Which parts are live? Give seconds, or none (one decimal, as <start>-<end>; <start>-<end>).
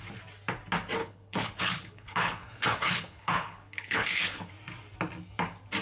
0.0-1.0; 4.5-5.8